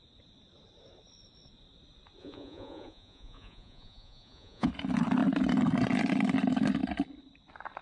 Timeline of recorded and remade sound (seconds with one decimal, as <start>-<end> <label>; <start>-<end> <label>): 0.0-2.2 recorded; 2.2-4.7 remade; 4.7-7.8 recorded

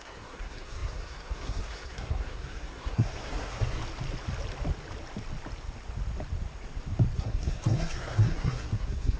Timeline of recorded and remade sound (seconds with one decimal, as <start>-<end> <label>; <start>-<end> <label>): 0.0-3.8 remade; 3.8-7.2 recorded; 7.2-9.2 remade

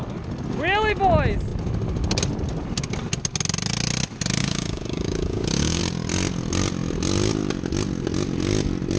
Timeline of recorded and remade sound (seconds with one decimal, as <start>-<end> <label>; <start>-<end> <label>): 0.0-4.4 recorded; 4.4-5.8 remade; 5.8-9.0 recorded

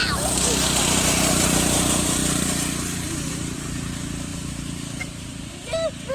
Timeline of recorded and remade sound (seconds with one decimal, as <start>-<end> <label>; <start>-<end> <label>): 0.0-0.8 recorded; 0.8-2.2 remade; 2.2-3.1 recorded; 3.1-6.1 remade

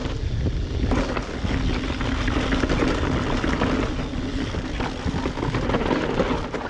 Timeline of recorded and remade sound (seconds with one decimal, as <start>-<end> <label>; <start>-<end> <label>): 0.0-6.7 recorded

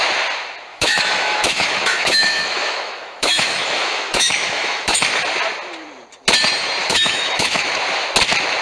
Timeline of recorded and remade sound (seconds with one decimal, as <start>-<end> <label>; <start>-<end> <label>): 0.0-0.7 recorded; 0.7-5.0 remade; 5.0-6.8 recorded; 6.8-7.7 remade; 7.7-8.6 recorded

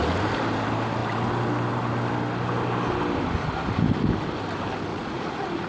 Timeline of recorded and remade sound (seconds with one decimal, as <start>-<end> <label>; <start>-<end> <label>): 0.0-4.9 recorded; 4.9-5.7 remade